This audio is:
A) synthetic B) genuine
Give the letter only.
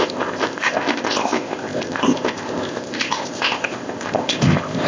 A